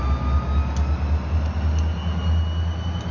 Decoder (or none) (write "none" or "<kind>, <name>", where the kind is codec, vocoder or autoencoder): none